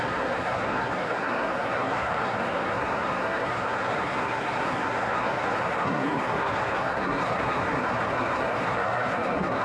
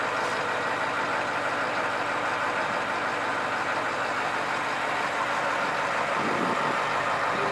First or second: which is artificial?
first